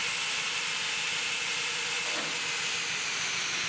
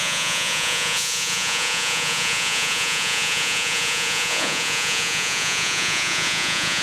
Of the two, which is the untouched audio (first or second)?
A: first